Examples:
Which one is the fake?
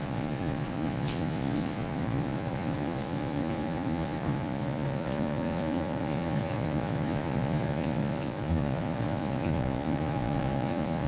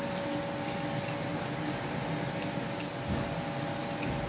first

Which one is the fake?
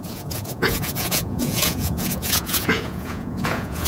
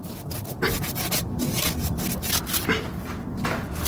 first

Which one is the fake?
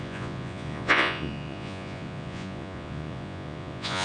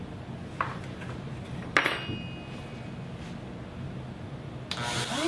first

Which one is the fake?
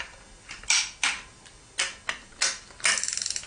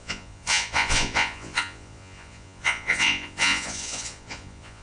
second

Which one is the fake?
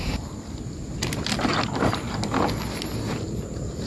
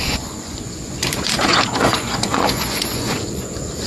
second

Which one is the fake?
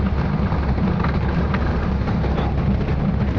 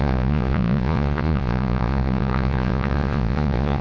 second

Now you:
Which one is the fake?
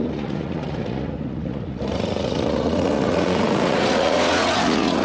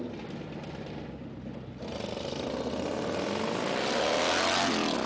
first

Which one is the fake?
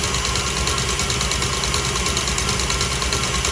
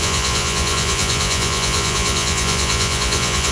second